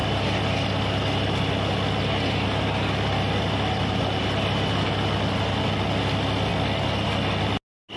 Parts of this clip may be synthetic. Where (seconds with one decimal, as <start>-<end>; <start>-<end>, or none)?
none